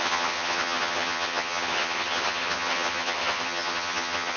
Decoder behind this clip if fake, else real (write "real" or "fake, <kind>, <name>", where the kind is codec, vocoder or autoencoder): fake, vocoder, HiFi-GAN